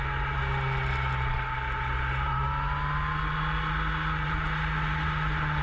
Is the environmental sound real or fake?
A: real